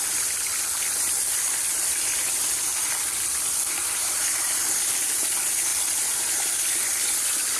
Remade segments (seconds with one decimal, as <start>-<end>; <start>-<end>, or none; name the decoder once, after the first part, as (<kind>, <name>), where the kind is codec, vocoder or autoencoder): none

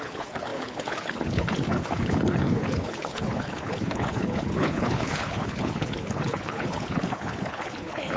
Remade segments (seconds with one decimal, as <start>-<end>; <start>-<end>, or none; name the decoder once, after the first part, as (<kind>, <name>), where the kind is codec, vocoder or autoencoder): 0.0-8.2 (codec, HILCodec)

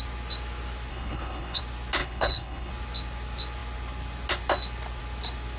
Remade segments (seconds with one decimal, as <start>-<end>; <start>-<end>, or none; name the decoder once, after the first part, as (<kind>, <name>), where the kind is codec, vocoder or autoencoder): 0.9-1.6 (codec, HILCodec); 2.0-2.7

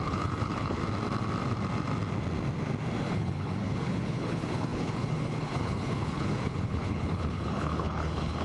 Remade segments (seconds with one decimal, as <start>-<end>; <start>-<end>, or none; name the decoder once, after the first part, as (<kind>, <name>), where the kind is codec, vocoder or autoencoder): 0.0-0.8 (codec, HILCodec); 3.1-8.4

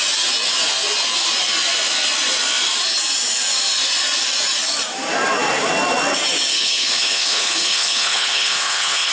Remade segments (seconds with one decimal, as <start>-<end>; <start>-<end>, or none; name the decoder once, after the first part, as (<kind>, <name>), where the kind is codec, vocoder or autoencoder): 6.5-9.1 (codec, HILCodec)

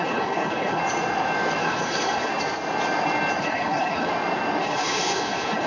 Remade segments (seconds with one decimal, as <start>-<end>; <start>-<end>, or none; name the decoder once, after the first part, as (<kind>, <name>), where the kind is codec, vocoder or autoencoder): 0.0-0.8 (codec, HILCodec); 1.6-2.3; 3.4-4.1; 4.6-5.7